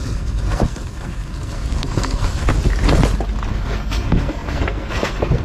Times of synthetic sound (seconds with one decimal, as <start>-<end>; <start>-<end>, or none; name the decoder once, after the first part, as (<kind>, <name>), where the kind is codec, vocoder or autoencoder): 0.0-2.5 (codec, SNAC); 3.5-5.4